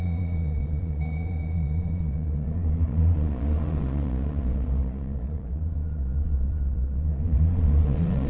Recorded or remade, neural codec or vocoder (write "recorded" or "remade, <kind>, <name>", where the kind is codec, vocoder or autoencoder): remade, vocoder, Vocos